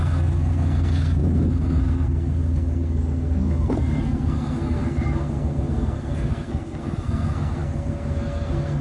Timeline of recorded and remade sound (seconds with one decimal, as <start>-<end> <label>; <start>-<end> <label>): 0.0-8.8 remade